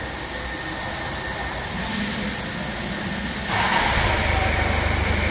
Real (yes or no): yes